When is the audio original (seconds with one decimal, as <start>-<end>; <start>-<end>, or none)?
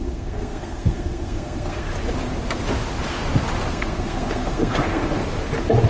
1.9-3.7; 5.2-5.9